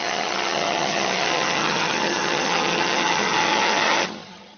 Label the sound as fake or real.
fake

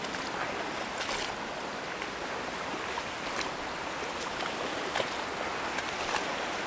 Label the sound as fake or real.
real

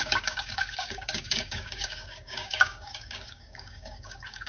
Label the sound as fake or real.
fake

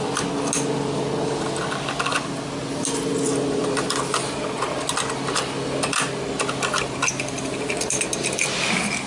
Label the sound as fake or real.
real